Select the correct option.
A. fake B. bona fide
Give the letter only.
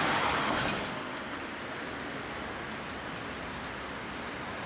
B